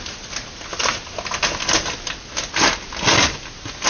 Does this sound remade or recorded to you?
recorded